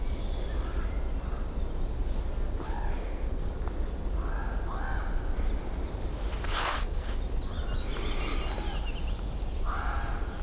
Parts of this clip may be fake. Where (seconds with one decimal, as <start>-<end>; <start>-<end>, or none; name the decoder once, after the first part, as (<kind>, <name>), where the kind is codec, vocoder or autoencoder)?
3.0-3.5 (codec, SNAC); 6.5-7.2